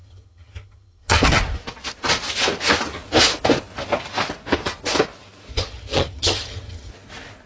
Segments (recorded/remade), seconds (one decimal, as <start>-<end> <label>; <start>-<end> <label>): 0.0-1.4 remade; 1.4-5.5 recorded; 5.5-6.9 remade; 6.9-7.5 recorded